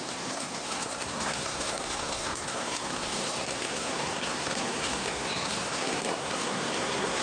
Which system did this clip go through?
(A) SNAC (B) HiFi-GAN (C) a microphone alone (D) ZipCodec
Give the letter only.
A